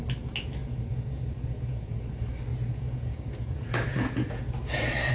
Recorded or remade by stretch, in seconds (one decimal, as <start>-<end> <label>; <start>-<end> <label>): 0.0-0.6 recorded; 0.6-2.1 remade; 2.1-2.5 recorded; 2.5-4.4 remade; 4.4-5.1 recorded

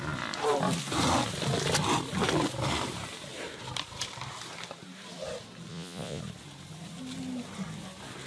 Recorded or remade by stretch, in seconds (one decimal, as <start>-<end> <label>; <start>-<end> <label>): 0.0-5.7 recorded; 5.7-6.2 remade; 6.2-8.3 recorded